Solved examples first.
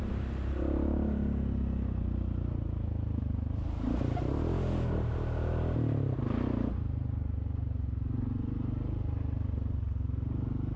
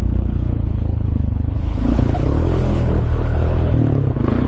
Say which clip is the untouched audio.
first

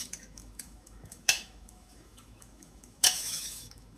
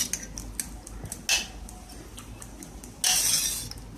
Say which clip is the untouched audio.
second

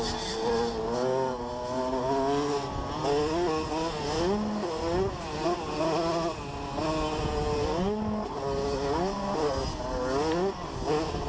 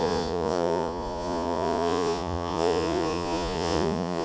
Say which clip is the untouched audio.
first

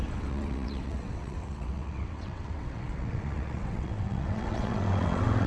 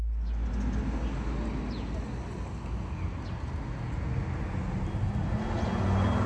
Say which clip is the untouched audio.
second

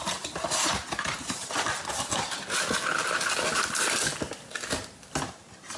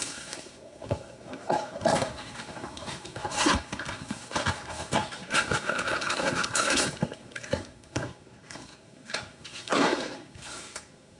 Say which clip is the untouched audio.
first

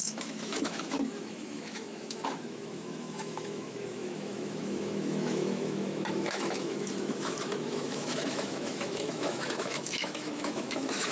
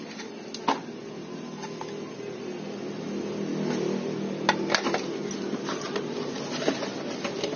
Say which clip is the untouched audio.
second